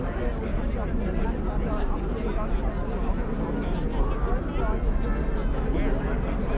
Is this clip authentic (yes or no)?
yes